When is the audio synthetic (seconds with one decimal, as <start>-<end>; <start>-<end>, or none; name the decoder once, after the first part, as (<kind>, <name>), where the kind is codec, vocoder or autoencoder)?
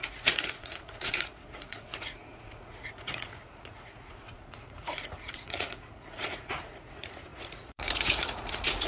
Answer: 0.0-8.9 (vocoder, Vocos)